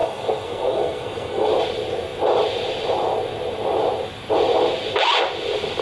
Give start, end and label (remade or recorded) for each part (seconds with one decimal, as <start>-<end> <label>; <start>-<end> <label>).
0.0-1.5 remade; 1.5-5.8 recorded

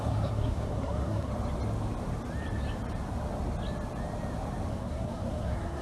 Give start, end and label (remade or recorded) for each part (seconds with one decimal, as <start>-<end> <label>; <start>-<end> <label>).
0.0-1.3 remade; 1.3-4.7 recorded; 4.7-5.8 remade

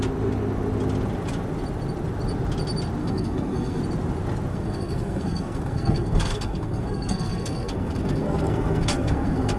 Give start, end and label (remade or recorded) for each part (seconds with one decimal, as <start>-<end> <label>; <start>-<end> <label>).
0.0-3.0 recorded; 3.0-3.8 remade; 3.8-4.5 recorded; 4.5-9.6 remade

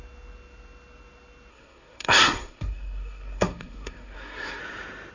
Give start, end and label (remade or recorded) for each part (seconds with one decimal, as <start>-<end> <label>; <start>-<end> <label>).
0.0-1.5 recorded; 1.5-4.6 remade; 4.6-5.1 recorded

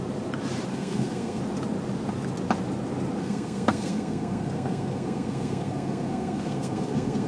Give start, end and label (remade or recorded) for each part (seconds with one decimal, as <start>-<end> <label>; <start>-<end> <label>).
0.0-0.7 recorded; 0.7-1.4 remade; 1.4-3.2 recorded; 3.2-7.3 remade

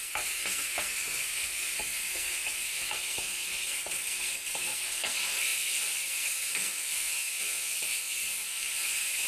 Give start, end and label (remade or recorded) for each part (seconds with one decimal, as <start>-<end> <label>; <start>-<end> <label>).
0.0-9.3 remade

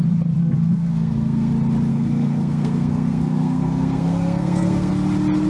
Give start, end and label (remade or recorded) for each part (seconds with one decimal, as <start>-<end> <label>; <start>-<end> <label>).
0.0-0.4 recorded; 0.4-1.5 remade; 1.5-1.9 recorded; 1.9-4.9 remade; 4.9-5.5 recorded

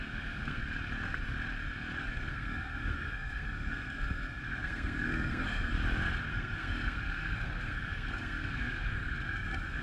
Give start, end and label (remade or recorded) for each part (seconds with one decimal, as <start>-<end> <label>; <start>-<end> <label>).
0.0-0.6 remade; 0.6-2.0 recorded; 2.0-5.7 remade; 5.7-6.3 recorded; 6.3-9.8 remade